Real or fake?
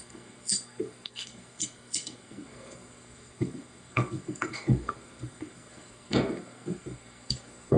fake